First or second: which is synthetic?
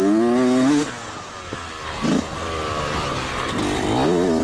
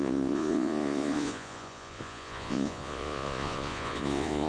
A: second